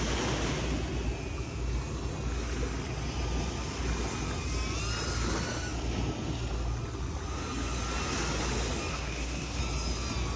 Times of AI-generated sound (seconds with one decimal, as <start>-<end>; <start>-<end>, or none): 8.9-9.6